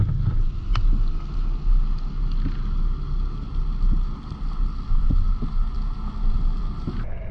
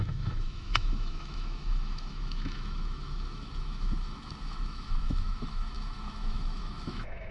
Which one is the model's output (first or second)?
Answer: second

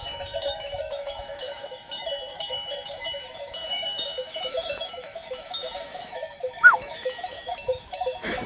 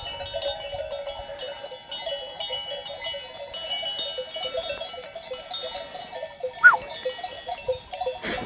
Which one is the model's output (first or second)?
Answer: first